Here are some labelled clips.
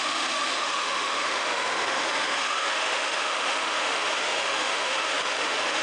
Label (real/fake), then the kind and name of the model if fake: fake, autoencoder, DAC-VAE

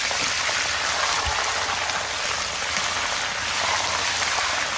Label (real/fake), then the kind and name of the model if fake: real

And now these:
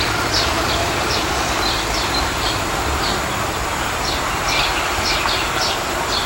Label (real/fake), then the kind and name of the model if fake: fake, vocoder, BigVGAN v2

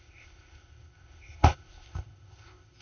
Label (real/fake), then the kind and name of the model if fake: fake, codec, ZipCodec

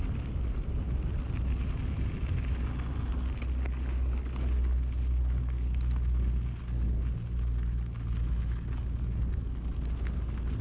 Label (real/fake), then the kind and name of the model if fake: real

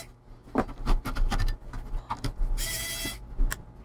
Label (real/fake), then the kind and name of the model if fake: real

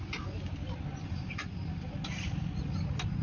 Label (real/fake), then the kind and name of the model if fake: real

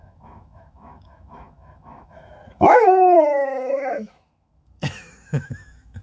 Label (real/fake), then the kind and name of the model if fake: fake, autoencoder, DAC-VAE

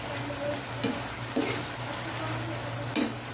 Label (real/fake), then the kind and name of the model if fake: real